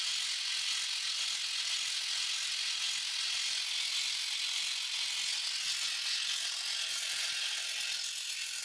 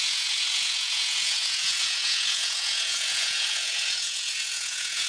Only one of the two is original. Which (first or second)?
first